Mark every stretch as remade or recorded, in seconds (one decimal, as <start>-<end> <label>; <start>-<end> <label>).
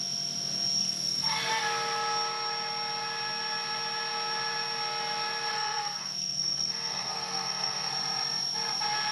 0.0-0.8 recorded; 0.8-1.5 remade; 1.5-5.5 recorded; 5.5-7.9 remade; 7.9-9.1 recorded